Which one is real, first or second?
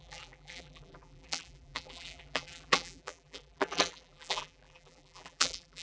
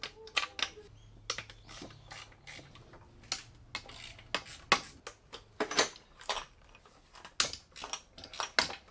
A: second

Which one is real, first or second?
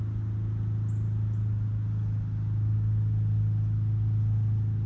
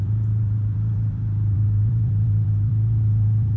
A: first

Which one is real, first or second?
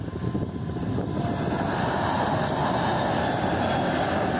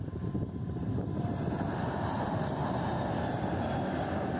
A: first